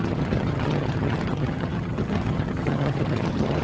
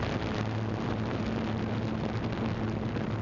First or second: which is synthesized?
first